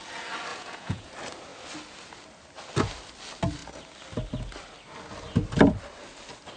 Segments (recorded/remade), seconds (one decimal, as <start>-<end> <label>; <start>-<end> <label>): 0.0-0.5 recorded; 0.5-1.1 remade; 1.1-6.6 recorded